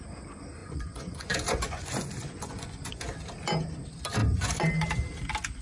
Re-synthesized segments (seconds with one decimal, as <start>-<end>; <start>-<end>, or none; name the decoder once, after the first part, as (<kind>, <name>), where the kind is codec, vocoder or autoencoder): 0.6-3.0 (vocoder, Vocos); 4.2-4.7

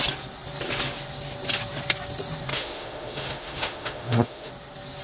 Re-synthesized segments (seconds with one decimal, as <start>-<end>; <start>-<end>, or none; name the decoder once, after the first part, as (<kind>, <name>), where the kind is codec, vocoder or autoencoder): 2.5-4.5 (autoencoder, DAC-VAE)

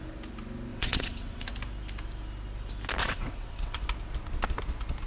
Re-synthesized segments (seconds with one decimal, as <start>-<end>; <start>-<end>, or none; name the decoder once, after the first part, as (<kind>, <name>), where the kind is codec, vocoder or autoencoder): 0.7-1.5 (vocoder, WaveNeXt); 3.0-3.8

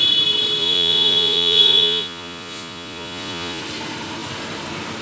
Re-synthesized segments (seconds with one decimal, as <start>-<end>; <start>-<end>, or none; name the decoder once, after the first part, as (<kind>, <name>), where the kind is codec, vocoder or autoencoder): 0.6-3.6 (vocoder, Vocos)

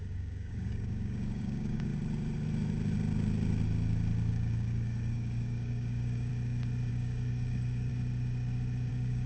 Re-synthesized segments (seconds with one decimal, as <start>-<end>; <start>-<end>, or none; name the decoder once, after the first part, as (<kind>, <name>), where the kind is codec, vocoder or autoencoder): 0.0-1.9 (codec, DAC); 4.3-6.3; 6.9-7.9; 8.9-9.3

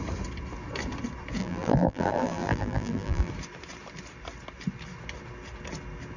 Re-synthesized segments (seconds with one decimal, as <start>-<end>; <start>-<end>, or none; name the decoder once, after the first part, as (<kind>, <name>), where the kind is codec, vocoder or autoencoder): 1.4-3.3 (vocoder, BigVGAN v2)

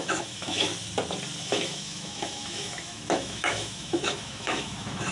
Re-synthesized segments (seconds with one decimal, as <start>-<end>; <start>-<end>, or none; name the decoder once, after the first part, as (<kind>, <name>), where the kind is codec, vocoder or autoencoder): 0.0-0.7 (autoencoder, DAC-VAE); 1.4-5.1